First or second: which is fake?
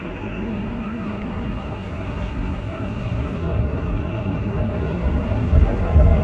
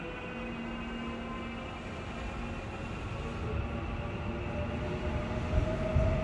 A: first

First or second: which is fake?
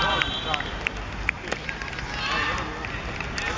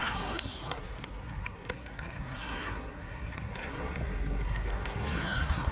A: second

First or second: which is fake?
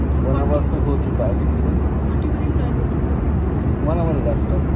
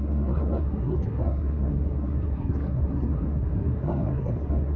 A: second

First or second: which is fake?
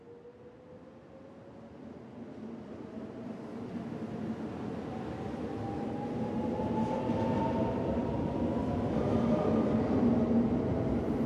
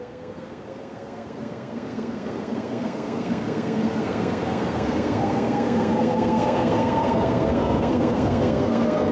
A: second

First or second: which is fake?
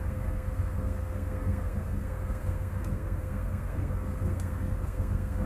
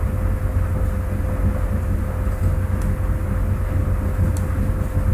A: first